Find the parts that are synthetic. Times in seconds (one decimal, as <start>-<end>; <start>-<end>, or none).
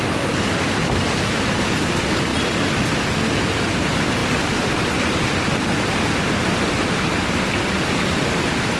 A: none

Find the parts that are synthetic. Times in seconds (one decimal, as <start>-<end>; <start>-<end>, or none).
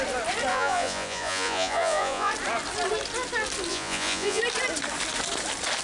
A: 0.5-2.3; 3.7-4.4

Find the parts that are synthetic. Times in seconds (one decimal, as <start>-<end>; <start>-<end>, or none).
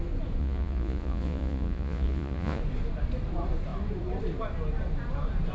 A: 0.4-2.6